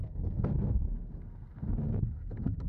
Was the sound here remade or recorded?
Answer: remade